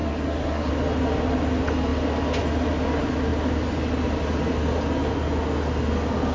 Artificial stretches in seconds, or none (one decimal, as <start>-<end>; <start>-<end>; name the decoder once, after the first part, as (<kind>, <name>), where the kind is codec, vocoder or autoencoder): 0.0-0.7 (codec, SNAC)